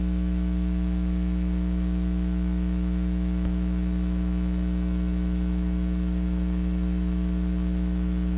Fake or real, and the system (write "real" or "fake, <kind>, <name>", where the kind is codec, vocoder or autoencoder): fake, autoencoder, DAC-VAE